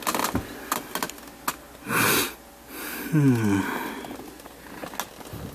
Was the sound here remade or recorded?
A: recorded